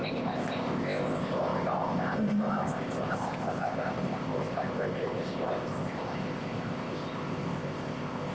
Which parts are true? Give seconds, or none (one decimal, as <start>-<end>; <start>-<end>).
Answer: none